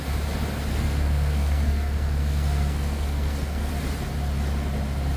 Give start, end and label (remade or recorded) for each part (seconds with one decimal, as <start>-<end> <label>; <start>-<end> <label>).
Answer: 0.0-0.7 recorded; 0.7-3.7 remade; 3.7-5.2 recorded